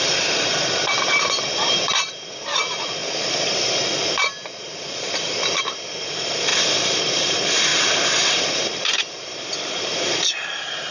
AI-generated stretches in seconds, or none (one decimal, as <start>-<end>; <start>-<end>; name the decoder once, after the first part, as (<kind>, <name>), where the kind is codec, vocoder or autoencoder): 0.0-3.0 (vocoder, BigVGAN v2); 5.6-6.5; 7.0-10.9

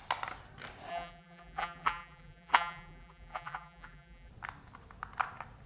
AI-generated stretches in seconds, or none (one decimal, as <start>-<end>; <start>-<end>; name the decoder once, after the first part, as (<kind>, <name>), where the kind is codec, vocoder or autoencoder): 0.9-4.3 (vocoder, BigVGAN v2)

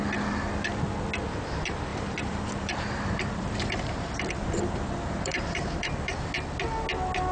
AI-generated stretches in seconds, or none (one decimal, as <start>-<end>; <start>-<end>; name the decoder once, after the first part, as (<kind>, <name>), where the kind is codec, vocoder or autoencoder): 1.9-6.3 (vocoder, BigVGAN v2)

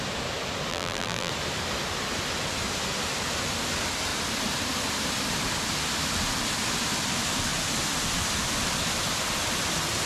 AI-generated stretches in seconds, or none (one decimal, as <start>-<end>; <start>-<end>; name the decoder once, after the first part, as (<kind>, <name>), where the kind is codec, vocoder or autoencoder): 0.7-1.3 (vocoder, BigVGAN v2)

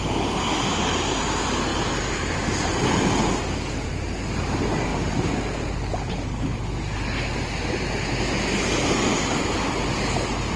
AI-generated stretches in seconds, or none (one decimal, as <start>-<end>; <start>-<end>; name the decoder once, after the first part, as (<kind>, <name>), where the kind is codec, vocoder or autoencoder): none

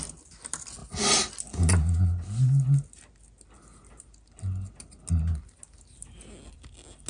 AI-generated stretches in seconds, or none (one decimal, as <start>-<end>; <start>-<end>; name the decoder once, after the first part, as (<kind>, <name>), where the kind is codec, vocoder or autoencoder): none

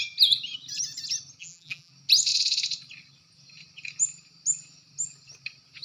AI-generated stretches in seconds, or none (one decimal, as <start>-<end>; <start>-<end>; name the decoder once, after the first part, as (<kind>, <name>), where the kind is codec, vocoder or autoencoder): 1.4-1.9 (vocoder, BigVGAN v2)

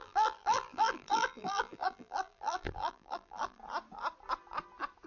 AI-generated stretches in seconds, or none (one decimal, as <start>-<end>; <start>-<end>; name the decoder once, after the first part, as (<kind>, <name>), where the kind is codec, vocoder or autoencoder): 0.0-3.6 (vocoder, BigVGAN v2)